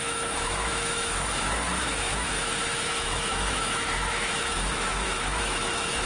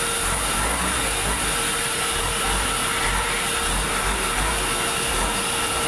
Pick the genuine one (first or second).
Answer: second